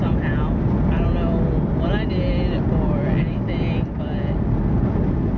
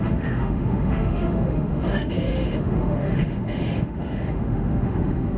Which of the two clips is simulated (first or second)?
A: second